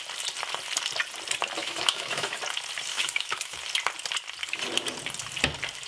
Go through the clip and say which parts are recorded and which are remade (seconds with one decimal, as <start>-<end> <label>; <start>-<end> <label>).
0.0-1.6 recorded; 1.6-2.4 remade; 2.4-2.9 recorded; 2.9-3.6 remade; 3.6-5.9 recorded